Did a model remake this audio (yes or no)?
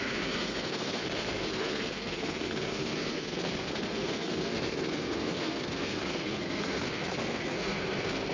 yes